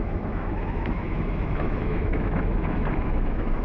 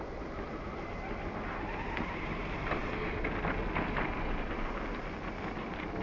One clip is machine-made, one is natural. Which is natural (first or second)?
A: second